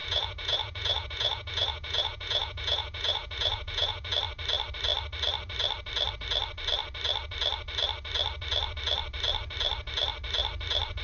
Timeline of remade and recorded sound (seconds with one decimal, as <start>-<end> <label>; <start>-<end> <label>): 0.0-4.1 remade; 4.1-11.0 recorded

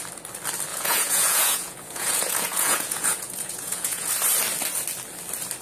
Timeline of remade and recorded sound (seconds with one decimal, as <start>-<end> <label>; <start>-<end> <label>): 0.0-0.7 recorded; 0.7-4.1 remade; 4.1-5.6 recorded

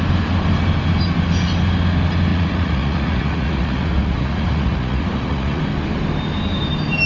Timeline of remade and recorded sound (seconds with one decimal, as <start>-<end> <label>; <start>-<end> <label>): 0.0-2.3 recorded; 2.3-5.6 remade; 5.6-7.1 recorded

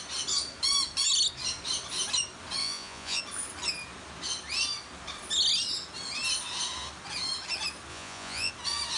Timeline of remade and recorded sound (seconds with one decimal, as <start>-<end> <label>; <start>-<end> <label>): 0.0-2.6 recorded; 2.6-3.2 remade; 3.2-7.9 recorded; 7.9-8.5 remade; 8.5-9.0 recorded

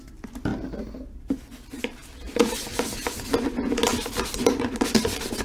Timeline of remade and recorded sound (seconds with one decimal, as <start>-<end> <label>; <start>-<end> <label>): 0.0-5.4 recorded

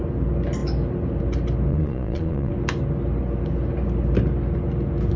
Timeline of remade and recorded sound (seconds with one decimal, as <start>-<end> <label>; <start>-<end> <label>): 0.0-1.7 recorded; 1.7-2.5 remade; 2.5-5.2 recorded

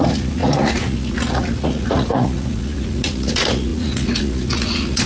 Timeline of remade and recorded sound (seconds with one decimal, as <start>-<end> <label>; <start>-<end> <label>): 0.0-5.1 remade